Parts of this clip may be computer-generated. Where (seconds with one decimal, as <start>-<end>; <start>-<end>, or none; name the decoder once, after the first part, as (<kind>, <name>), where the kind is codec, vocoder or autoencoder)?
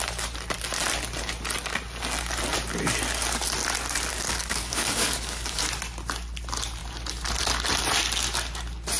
4.1-5.6 (codec, DAC)